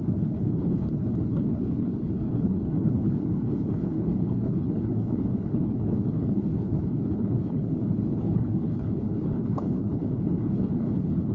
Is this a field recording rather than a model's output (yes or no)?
no